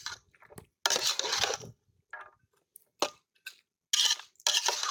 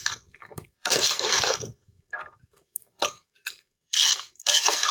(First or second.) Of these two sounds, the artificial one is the second